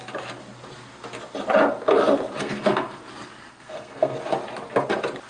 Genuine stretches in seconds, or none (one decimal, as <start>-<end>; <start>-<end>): 0.0-2.4; 3.0-3.5; 4.2-5.3